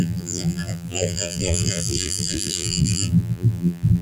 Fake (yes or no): yes